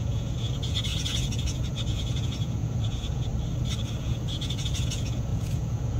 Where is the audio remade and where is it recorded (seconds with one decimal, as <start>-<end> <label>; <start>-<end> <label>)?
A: 0.0-3.3 remade; 3.3-4.0 recorded; 4.0-6.0 remade